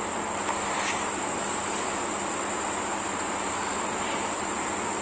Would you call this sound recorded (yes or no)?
yes